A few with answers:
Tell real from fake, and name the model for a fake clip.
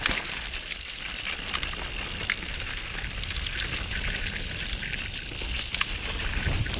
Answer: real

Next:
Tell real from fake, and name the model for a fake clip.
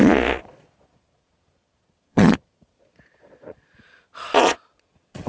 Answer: fake, vocoder, Vocos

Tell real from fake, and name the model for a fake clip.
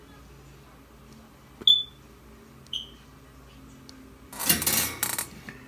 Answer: real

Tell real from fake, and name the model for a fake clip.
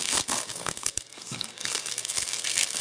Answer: fake, codec, SNAC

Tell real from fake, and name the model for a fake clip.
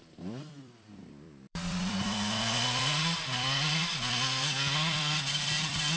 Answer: fake, vocoder, BigVGAN v2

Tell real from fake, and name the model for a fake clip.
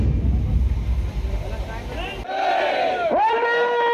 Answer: real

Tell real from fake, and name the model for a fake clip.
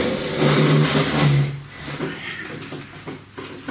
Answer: real